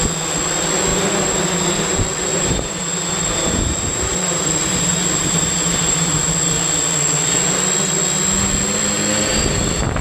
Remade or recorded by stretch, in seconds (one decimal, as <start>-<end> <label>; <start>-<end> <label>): 0.0-0.9 recorded; 0.9-1.7 remade; 1.7-2.3 recorded; 2.3-6.2 remade; 6.2-10.0 recorded